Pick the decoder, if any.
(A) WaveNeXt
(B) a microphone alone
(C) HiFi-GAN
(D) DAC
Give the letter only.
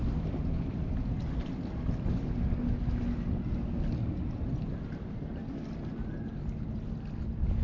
B